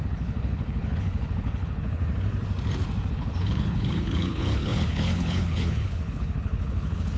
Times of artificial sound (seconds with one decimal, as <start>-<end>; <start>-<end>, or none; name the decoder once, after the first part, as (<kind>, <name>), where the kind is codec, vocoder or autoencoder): 0.0-2.0 (codec, HILCodec); 3.1-7.2